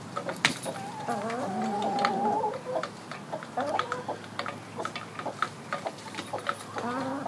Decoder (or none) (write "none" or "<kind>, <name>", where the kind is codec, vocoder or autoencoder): none